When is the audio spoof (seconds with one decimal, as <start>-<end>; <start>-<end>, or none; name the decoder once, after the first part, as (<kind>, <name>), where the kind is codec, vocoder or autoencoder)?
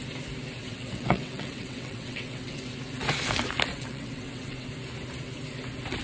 0.6-2.6 (vocoder, WaveNeXt); 3.7-4.7